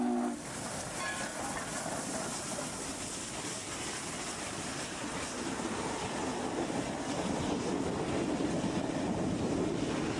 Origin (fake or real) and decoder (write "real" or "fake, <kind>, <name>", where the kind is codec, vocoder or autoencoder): real